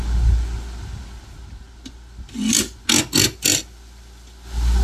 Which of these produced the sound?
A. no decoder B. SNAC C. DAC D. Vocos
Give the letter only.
A